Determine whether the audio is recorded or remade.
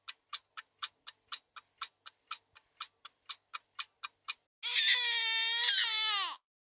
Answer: recorded